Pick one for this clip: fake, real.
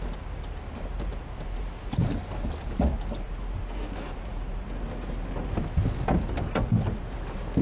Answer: real